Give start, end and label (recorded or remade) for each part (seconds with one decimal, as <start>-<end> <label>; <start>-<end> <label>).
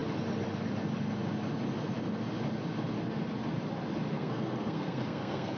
0.0-4.1 recorded; 4.1-5.6 remade